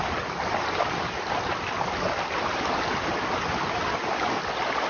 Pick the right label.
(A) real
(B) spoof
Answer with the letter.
A